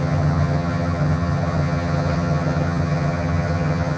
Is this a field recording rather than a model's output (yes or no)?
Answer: no